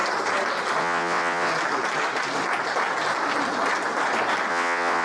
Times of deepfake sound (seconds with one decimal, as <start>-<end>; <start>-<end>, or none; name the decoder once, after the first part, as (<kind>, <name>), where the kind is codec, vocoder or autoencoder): 0.8-1.5 (vocoder, WaveNeXt); 4.5-5.0